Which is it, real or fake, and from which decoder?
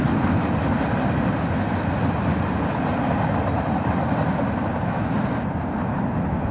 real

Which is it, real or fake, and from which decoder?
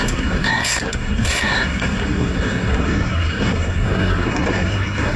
fake, codec, SNAC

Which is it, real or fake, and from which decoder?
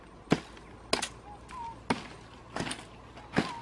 real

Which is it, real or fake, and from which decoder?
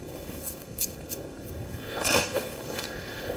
fake, codec, SNAC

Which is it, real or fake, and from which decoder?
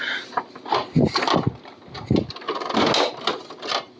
real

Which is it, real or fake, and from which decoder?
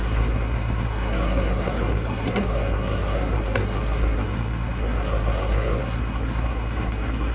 fake, codec, SNAC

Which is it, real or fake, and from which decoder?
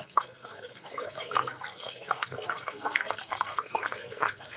fake, codec, SNAC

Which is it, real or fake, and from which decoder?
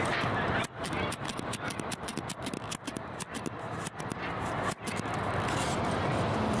real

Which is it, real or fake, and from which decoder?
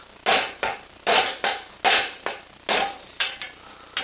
real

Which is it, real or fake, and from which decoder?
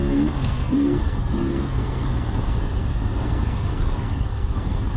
fake, codec, SNAC